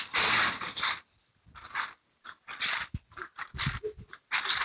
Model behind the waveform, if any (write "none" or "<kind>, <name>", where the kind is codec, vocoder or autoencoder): none